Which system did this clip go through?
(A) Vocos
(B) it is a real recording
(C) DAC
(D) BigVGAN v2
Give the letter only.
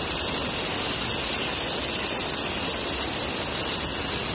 B